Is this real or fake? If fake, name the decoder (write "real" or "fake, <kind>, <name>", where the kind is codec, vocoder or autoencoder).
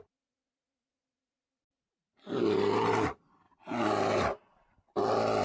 real